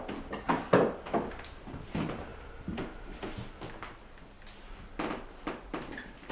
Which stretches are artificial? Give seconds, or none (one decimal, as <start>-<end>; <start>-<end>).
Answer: none